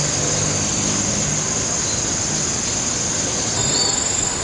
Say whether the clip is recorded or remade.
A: recorded